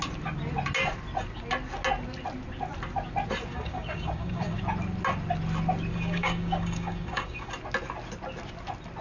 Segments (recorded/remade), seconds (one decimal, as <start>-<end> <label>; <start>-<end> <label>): 0.0-3.5 recorded; 3.5-4.6 remade; 4.6-5.9 recorded; 5.9-7.5 remade; 7.5-9.0 recorded